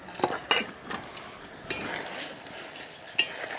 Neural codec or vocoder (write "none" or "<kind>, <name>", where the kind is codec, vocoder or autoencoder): none